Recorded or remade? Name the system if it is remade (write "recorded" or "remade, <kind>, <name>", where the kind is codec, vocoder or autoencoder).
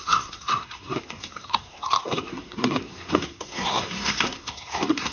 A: remade, codec, SNAC